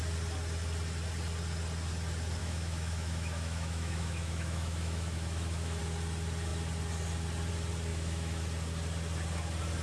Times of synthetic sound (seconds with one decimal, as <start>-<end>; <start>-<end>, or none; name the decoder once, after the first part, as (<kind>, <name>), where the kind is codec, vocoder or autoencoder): 2.4-5.8 (autoencoder, DAC-VAE); 7.9-8.4